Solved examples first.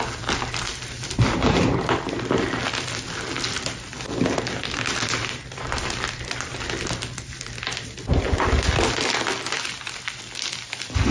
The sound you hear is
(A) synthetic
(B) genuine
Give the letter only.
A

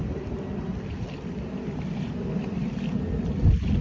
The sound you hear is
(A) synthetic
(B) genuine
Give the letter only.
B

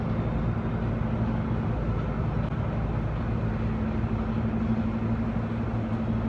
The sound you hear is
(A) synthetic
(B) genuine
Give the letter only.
B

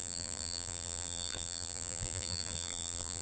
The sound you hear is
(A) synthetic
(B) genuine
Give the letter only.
A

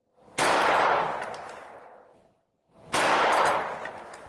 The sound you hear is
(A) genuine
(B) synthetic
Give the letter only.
A